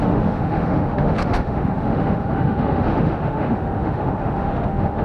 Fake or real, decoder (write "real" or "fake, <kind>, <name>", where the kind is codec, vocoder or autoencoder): fake, autoencoder, DAC-VAE